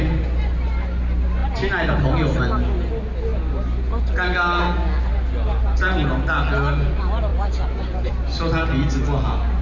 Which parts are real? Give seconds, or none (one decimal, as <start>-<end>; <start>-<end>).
0.0-9.6